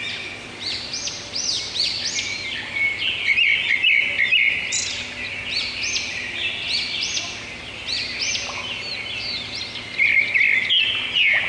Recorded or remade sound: recorded